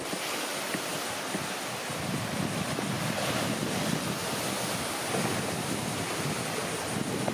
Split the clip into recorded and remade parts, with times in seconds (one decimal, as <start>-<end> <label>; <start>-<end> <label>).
0.0-0.9 recorded; 0.9-3.1 remade; 3.1-4.2 recorded; 4.2-5.7 remade; 5.7-7.3 recorded